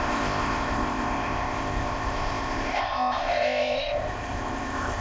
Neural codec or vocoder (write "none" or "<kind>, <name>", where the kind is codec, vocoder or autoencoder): codec, ZipCodec